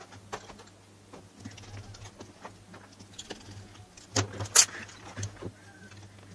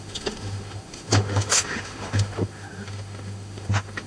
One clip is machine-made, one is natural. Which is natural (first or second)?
first